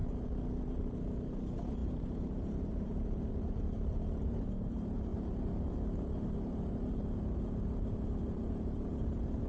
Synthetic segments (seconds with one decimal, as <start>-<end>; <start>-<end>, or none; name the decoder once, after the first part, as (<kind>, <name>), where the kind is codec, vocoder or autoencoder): 0.6-5.1 (vocoder, BigVGAN v2); 8.4-9.5